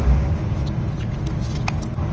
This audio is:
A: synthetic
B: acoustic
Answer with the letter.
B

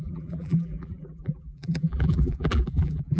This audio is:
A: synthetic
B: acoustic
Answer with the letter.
A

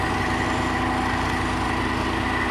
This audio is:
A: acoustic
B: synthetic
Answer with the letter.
A